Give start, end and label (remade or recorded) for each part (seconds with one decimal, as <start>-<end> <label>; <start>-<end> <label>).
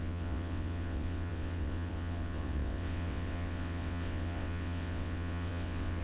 0.0-6.0 remade